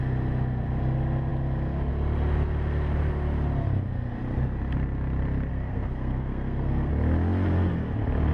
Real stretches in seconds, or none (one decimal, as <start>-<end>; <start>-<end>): 0.0-5.5; 6.9-8.3